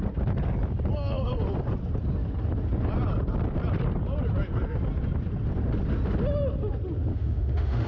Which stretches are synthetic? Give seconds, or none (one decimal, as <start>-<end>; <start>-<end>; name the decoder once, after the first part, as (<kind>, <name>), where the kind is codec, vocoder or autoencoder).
7.1-7.9 (autoencoder, DAC-VAE)